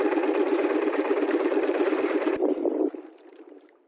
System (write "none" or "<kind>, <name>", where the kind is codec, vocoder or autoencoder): vocoder, BigVGAN v2